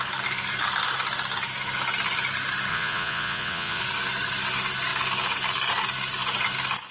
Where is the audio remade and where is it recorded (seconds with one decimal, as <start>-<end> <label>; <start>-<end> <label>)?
0.0-2.7 recorded; 2.7-3.8 remade; 3.8-6.9 recorded